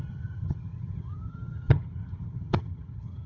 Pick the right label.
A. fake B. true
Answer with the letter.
A